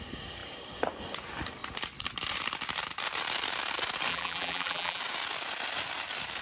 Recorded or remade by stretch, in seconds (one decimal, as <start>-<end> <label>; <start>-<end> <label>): 0.0-4.1 recorded; 4.1-5.0 remade; 5.0-6.4 recorded